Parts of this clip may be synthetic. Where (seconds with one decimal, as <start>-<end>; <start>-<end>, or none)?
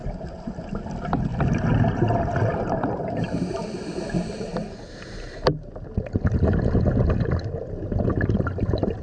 0.0-0.8; 2.5-3.9